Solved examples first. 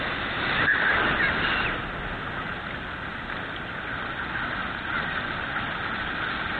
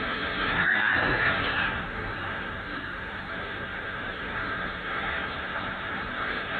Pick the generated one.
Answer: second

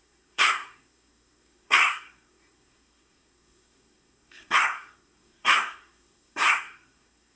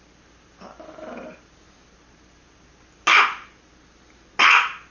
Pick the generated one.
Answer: first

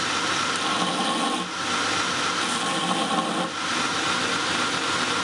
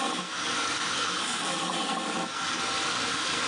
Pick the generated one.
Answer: second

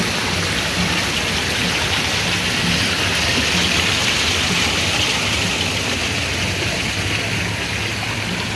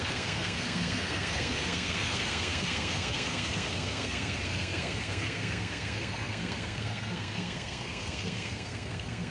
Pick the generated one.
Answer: second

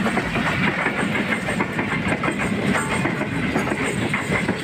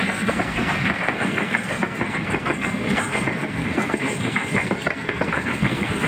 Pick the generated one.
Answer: second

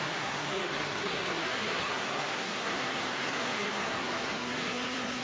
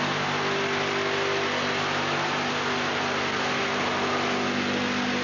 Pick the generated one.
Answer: first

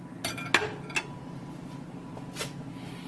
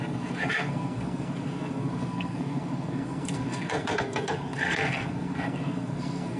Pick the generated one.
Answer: second